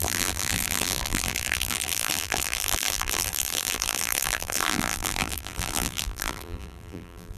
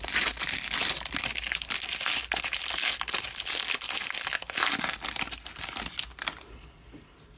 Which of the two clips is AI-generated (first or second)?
first